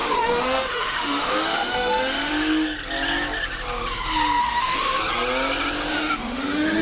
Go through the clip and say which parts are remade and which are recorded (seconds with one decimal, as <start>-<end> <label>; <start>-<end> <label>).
0.0-2.3 remade; 2.3-4.4 recorded; 4.4-5.0 remade; 5.0-5.9 recorded; 5.9-6.8 remade